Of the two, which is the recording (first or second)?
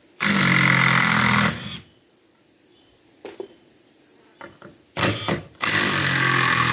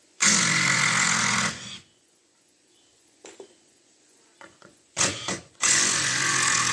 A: first